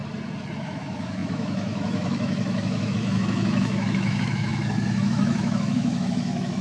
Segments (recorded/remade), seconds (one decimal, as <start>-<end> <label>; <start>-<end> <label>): 0.0-0.6 recorded; 0.6-6.6 remade